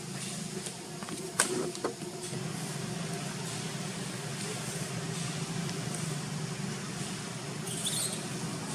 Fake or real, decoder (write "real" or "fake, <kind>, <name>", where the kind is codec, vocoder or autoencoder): real